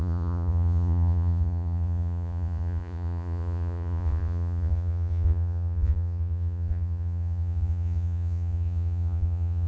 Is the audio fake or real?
fake